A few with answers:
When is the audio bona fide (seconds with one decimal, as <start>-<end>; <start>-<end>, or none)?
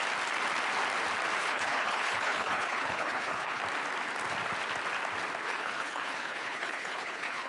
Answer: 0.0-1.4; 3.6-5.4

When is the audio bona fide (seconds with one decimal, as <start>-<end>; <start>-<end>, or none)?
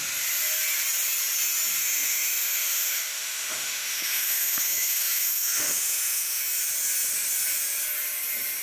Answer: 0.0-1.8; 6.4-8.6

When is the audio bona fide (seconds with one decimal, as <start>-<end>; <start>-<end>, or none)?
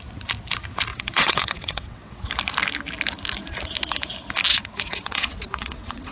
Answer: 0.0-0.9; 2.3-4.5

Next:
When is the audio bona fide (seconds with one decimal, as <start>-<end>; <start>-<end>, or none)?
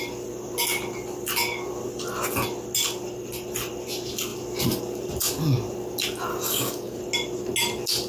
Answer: 0.0-6.3; 7.0-8.1